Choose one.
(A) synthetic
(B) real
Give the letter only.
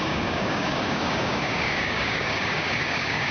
A